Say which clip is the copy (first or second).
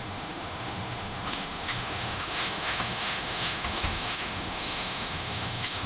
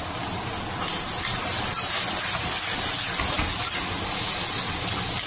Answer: first